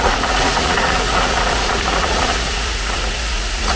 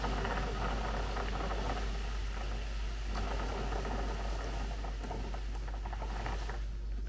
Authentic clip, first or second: second